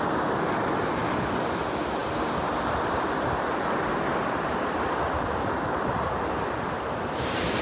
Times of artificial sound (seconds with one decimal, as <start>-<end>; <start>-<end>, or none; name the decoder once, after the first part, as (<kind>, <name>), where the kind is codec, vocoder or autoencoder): none